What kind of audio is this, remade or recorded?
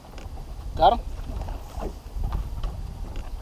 recorded